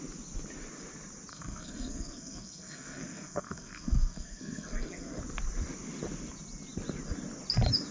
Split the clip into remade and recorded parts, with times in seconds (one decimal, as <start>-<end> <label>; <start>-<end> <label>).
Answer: 0.0-1.3 recorded; 1.3-5.2 remade; 5.2-7.9 recorded